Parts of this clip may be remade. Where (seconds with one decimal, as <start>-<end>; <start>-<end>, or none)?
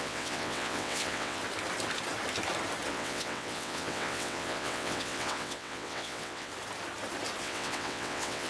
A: 0.0-1.4; 2.9-6.5; 7.4-8.5